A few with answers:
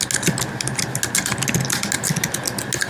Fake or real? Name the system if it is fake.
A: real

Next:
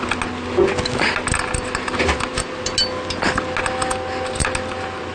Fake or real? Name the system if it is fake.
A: real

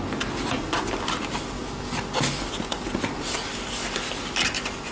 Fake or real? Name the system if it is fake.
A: real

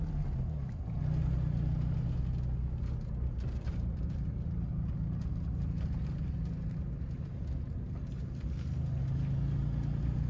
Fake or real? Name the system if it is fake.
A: real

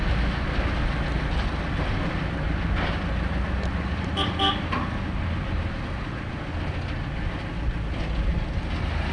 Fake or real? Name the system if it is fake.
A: real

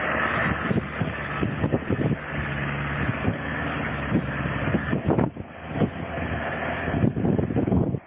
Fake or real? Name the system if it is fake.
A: real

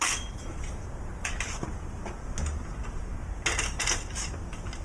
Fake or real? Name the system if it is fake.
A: real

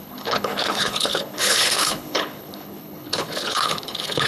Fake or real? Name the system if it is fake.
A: fake, codec, HILCodec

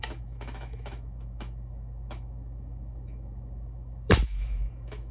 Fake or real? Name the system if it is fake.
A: fake, autoencoder, DAC-VAE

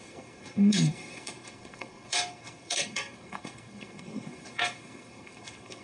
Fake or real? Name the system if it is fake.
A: fake, codec, SNAC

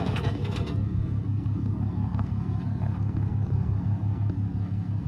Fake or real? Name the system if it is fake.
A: fake, codec, SNAC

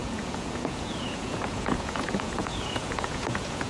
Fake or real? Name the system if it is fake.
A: fake, vocoder, Vocos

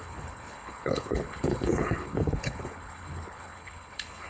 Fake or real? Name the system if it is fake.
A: fake, codec, HILCodec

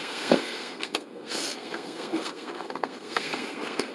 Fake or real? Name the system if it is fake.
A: fake, codec, SNAC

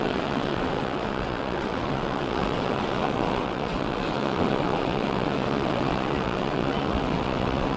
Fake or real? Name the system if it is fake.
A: fake, vocoder, WaveNeXt